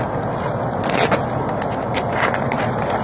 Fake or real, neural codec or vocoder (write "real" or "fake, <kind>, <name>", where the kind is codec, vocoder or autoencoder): real